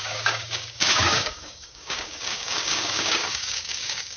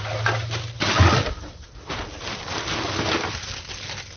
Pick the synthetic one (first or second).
first